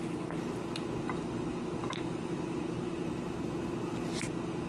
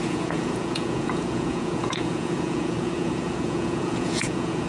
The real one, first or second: first